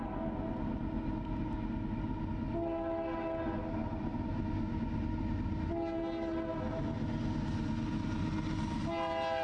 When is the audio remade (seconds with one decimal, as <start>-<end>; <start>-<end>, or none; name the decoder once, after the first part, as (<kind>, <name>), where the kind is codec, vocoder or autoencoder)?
none